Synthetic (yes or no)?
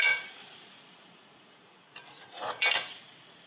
yes